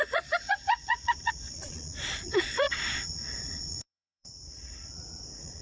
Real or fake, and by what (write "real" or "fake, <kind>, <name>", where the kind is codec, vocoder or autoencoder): fake, vocoder, Vocos